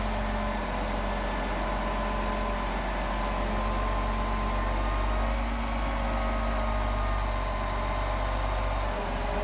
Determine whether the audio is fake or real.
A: real